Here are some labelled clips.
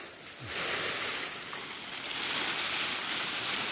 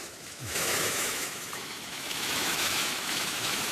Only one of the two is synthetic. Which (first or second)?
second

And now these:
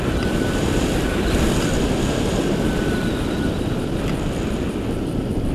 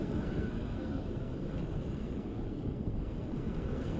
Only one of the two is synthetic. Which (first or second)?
second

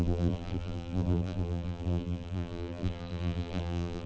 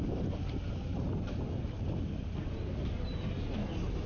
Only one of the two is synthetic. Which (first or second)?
first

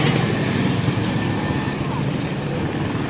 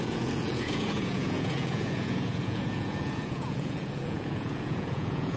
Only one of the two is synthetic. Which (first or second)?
second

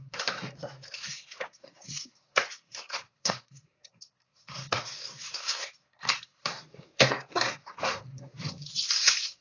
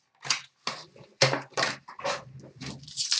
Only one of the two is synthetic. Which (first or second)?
first